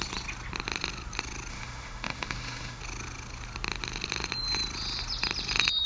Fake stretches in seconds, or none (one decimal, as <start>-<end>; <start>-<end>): 1.5-2.8